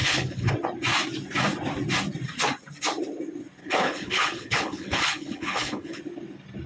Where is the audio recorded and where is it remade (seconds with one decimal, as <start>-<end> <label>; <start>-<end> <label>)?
0.0-0.5 remade; 0.5-3.6 recorded; 3.6-6.0 remade; 6.0-6.7 recorded